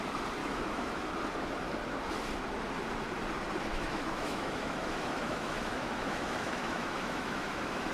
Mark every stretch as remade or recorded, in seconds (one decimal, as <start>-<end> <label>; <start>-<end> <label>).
0.0-0.4 recorded; 0.4-1.1 remade; 1.1-3.7 recorded; 3.7-7.9 remade